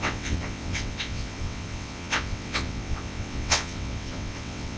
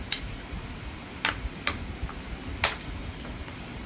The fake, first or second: first